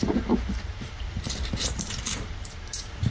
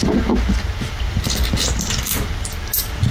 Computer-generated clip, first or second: first